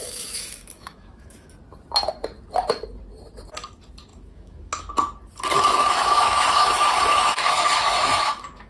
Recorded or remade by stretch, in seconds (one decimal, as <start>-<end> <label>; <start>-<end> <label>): 0.0-1.5 remade; 1.5-4.1 recorded; 4.1-4.8 remade; 4.8-5.5 recorded; 5.5-8.7 remade